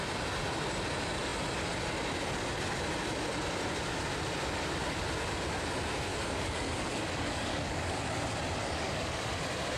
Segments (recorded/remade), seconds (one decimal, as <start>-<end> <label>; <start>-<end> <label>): 0.0-6.1 recorded; 6.1-8.2 remade; 8.2-8.6 recorded; 8.6-9.3 remade; 9.3-9.8 recorded